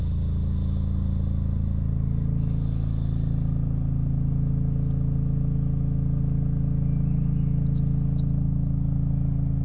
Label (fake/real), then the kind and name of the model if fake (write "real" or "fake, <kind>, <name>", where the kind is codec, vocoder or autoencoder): real